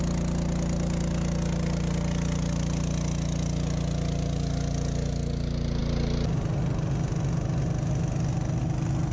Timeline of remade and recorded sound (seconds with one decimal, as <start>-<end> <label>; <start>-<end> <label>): 0.0-9.1 recorded